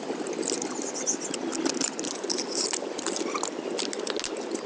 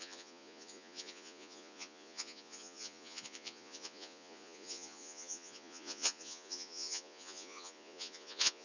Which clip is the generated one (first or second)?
second